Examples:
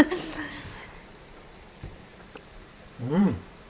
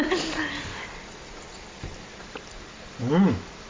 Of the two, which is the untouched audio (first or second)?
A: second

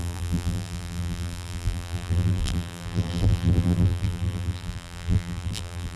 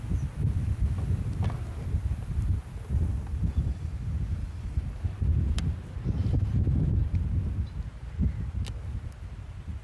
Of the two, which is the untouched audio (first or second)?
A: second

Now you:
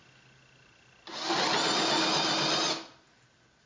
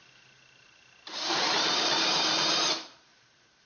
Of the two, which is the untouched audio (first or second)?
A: first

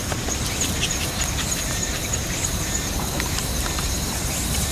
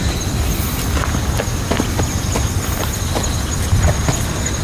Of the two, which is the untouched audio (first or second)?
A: second